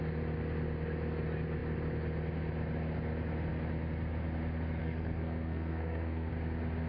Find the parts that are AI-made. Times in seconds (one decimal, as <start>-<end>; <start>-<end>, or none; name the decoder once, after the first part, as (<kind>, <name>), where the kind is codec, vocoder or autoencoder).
4.8-6.3 (codec, SNAC)